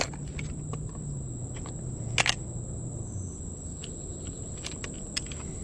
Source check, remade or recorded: recorded